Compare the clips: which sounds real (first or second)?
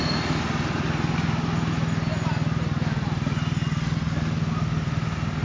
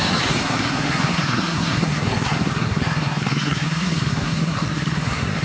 first